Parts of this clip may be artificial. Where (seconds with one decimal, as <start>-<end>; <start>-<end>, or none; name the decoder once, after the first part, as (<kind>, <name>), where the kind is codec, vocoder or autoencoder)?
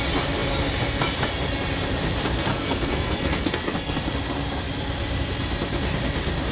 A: 2.5-4.0 (codec, SNAC)